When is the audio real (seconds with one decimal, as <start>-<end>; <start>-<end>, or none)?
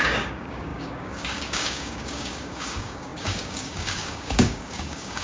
none